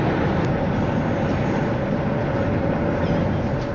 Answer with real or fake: real